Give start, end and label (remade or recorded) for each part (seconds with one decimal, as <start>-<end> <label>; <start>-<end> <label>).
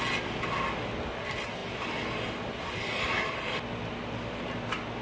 0.0-5.0 recorded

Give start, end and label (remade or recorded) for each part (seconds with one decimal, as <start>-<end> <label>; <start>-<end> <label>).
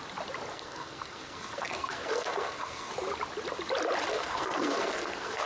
0.0-0.5 recorded; 0.5-2.9 remade; 2.9-4.1 recorded; 4.1-5.5 remade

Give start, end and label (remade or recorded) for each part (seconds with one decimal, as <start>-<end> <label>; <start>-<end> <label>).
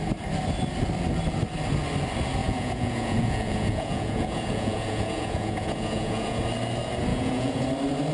0.0-2.4 recorded; 2.4-6.4 remade; 6.4-7.1 recorded; 7.1-7.6 remade; 7.6-8.1 recorded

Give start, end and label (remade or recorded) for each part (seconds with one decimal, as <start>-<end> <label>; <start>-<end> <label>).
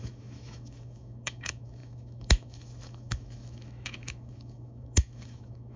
0.0-5.8 remade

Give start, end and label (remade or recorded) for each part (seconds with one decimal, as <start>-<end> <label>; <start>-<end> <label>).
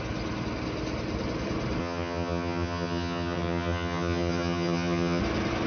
0.0-1.8 recorded; 1.8-5.2 remade; 5.2-5.7 recorded